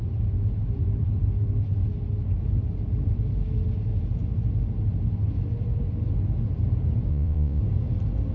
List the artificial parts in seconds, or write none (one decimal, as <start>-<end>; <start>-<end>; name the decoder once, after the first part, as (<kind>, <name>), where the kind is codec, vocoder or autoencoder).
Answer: 7.1-7.6 (vocoder, Vocos)